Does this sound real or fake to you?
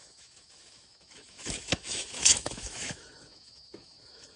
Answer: fake